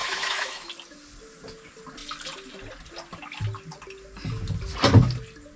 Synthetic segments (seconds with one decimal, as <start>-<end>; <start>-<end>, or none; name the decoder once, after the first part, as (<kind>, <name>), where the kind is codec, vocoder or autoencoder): 0.0-0.7 (autoencoder, DAC-VAE)